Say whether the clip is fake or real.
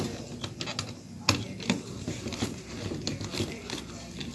real